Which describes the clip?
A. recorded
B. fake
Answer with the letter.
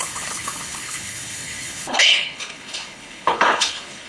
B